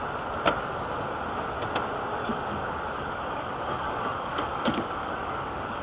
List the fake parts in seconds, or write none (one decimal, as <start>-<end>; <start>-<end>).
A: 2.2-5.8